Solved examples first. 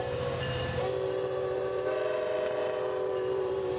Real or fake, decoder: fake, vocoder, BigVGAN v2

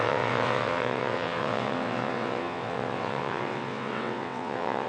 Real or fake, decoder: fake, vocoder, WaveNeXt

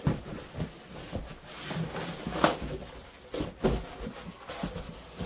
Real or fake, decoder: real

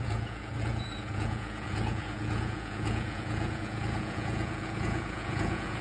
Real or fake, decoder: fake, vocoder, Vocos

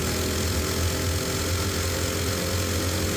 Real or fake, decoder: real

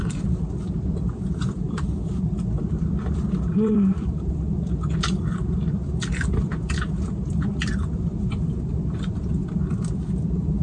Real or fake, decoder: fake, vocoder, BigVGAN v2